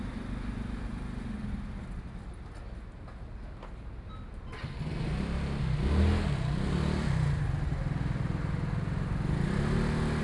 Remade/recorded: recorded